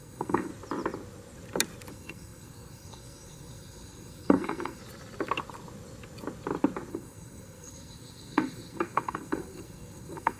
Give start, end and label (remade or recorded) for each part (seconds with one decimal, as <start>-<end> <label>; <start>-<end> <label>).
0.0-0.5 remade; 0.5-1.9 recorded; 1.9-4.8 remade; 4.8-6.9 recorded; 6.9-10.4 remade